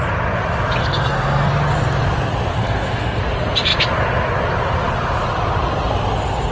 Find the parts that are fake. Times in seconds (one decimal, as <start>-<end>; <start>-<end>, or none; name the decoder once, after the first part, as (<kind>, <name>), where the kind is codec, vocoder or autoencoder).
0.8-1.5 (codec, SNAC); 2.5-3.2